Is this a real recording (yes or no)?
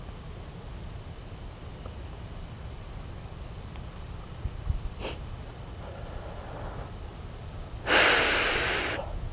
yes